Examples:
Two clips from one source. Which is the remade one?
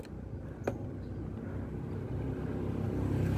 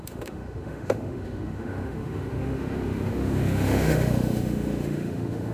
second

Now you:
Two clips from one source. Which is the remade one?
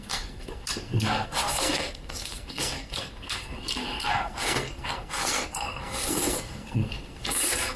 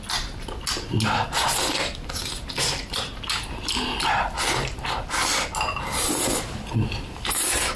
first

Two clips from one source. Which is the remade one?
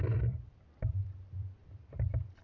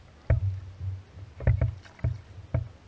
first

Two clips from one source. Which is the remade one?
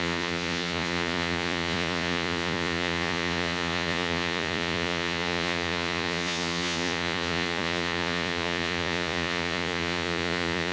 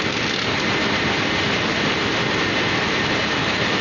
first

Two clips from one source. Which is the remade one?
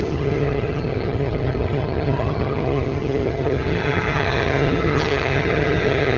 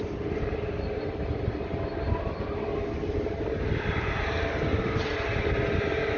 first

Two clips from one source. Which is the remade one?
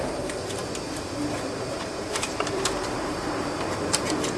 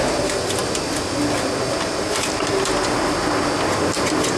first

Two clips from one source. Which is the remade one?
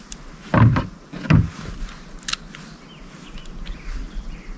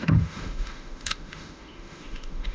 second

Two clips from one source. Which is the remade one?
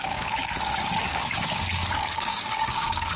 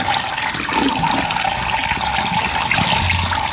first